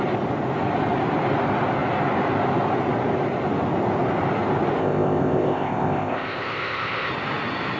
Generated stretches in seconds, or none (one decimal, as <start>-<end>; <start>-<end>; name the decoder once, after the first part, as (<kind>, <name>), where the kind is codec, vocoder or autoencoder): 4.8-7.1 (codec, ZipCodec)